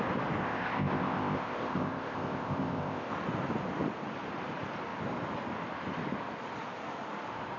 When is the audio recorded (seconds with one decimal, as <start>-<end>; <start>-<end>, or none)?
0.0-0.4; 3.1-7.6